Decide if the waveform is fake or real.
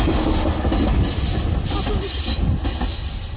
real